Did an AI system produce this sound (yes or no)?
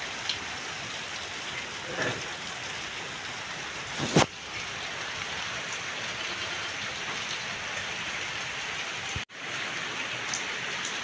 no